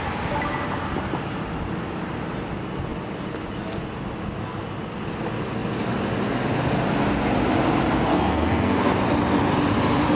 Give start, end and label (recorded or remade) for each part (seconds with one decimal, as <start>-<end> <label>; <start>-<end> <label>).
0.0-8.1 recorded; 8.1-8.9 remade; 8.9-10.2 recorded